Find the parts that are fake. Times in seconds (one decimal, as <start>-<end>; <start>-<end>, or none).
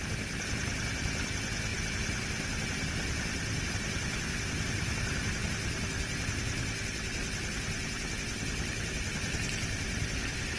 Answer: none